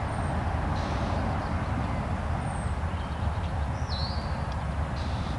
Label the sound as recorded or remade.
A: recorded